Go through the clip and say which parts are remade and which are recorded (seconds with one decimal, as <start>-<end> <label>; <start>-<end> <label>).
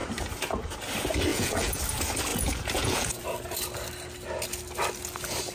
0.0-1.3 recorded; 1.3-1.8 remade; 1.8-2.3 recorded; 2.3-3.2 remade; 3.2-5.5 recorded